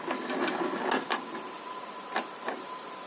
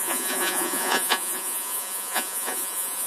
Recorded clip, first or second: first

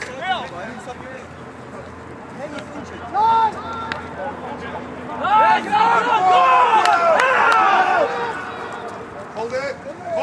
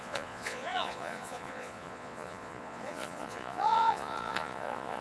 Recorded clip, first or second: first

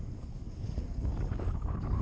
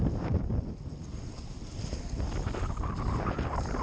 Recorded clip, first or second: second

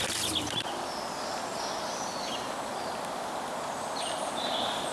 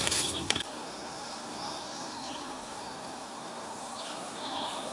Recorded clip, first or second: first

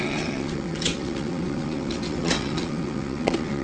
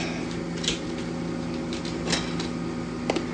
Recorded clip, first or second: second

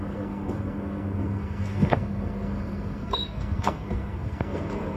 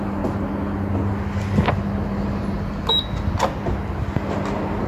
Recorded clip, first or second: second